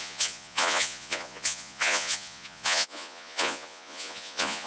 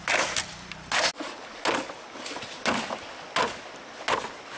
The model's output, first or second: first